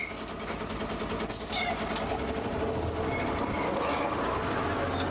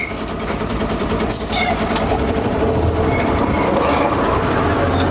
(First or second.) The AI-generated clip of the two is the second